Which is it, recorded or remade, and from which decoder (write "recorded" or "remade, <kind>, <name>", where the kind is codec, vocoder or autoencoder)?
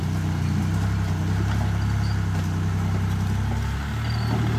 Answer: recorded